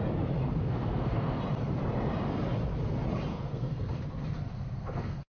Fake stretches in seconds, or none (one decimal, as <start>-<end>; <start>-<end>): 0.6-1.4; 3.3-4.0; 4.5-5.3